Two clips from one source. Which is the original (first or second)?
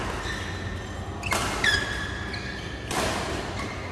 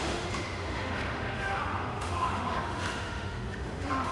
first